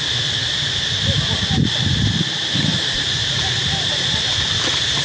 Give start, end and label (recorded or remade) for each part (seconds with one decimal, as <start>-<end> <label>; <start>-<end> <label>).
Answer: 0.0-5.0 recorded